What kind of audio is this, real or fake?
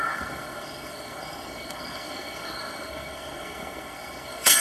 fake